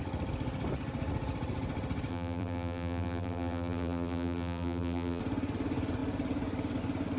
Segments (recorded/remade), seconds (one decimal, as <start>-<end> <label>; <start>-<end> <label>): 0.0-2.1 recorded; 2.1-5.2 remade; 5.2-7.2 recorded